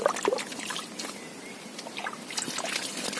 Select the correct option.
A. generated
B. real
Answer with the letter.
B